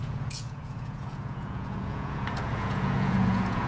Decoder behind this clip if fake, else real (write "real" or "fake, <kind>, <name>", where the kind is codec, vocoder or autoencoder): fake, vocoder, Vocos